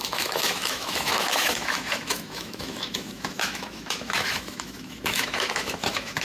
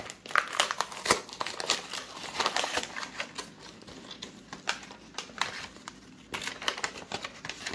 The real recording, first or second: second